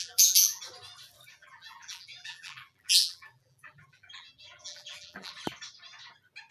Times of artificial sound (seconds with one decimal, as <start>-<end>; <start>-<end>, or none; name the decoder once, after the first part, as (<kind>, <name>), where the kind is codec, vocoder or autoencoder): 0.0-0.6 (vocoder, BigVGAN v2); 1.4-5.3